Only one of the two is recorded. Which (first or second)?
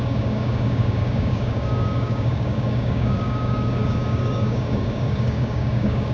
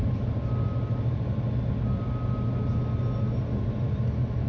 second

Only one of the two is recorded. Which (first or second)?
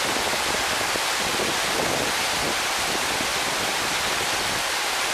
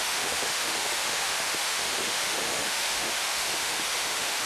first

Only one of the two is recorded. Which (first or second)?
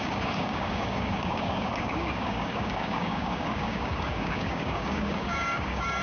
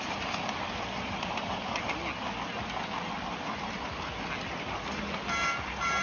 second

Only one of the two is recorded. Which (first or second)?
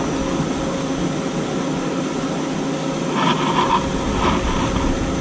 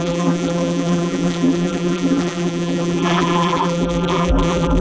first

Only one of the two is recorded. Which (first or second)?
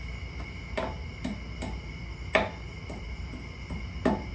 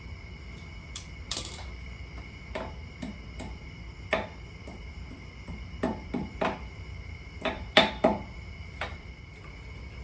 first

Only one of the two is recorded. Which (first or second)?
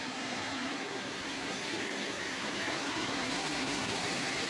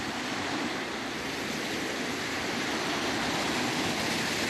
second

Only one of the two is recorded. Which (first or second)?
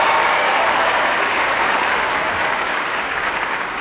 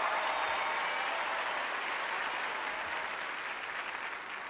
second